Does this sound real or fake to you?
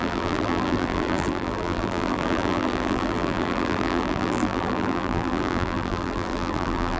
fake